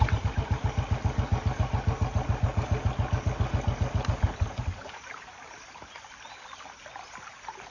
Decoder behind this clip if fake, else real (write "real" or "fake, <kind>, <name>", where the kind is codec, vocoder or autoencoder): real